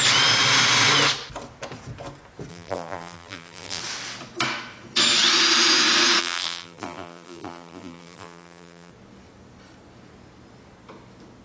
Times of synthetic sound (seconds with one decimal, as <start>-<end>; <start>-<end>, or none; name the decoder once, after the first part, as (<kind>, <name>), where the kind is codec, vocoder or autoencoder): 2.5-3.8 (vocoder, BigVGAN v2); 6.2-8.9